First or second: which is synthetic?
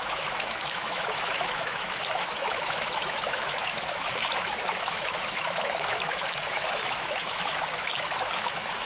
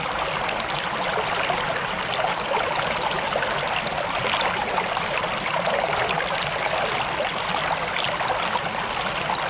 first